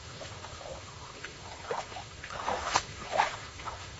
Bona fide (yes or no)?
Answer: no